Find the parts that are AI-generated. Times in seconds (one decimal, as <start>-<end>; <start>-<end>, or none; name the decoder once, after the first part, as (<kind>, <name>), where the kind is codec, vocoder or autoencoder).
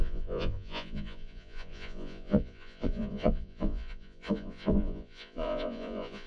0.0-6.3 (vocoder, Vocos)